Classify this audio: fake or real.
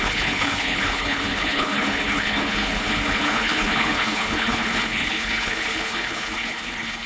fake